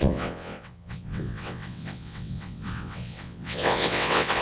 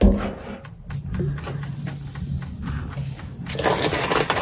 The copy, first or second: first